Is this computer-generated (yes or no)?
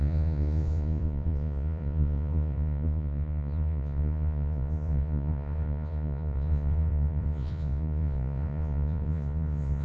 yes